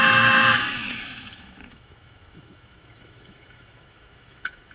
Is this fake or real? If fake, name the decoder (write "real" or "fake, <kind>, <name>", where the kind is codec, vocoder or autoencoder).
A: fake, autoencoder, DAC-VAE